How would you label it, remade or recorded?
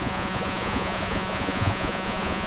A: remade